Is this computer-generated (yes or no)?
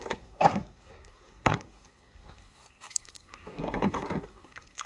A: yes